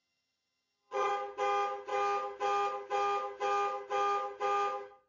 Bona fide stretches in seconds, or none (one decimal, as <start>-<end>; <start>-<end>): 1.1-5.1